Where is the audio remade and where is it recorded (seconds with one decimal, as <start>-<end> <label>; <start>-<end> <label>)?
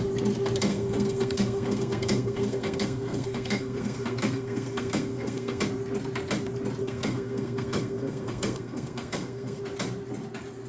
0.0-0.7 recorded; 0.7-5.6 remade; 5.6-6.8 recorded; 6.8-9.6 remade; 9.6-10.7 recorded